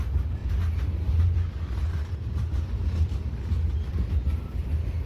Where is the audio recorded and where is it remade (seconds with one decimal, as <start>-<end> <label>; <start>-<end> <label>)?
0.0-5.1 recorded